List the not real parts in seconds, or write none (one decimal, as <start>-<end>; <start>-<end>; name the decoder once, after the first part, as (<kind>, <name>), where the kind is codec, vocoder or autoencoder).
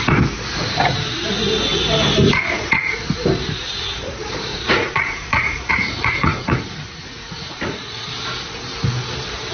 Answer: 4.5-8.1 (vocoder, Vocos)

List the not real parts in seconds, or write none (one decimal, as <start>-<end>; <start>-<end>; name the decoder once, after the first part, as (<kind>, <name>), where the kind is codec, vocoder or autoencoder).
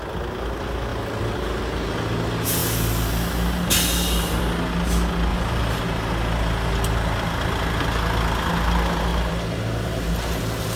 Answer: 5.3-5.8 (vocoder, BigVGAN v2); 9.1-10.4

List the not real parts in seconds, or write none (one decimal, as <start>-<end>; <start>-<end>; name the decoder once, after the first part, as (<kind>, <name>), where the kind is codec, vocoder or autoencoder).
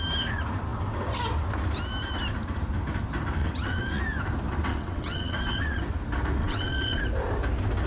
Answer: 3.4-4.0 (vocoder, WaveNeXt); 4.7-5.8; 6.4-7.0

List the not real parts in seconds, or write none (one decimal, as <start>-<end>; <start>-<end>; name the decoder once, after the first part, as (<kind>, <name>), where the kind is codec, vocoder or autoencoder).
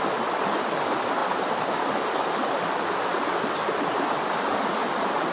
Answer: none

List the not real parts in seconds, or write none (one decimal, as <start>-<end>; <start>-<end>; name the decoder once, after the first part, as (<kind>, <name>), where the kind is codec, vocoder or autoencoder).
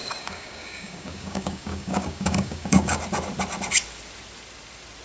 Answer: 0.0-3.0 (codec, DAC)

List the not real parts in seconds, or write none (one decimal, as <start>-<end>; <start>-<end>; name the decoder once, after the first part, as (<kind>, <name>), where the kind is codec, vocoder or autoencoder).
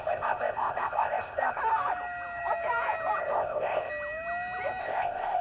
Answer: 0.0-1.6 (codec, ZipCodec); 3.2-3.9; 4.8-5.4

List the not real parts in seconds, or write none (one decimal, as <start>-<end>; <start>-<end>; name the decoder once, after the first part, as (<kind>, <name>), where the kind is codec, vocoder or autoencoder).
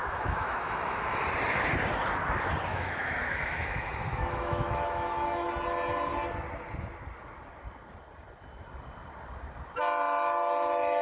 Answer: 0.0-1.2 (autoencoder, DAC-VAE); 2.7-5.5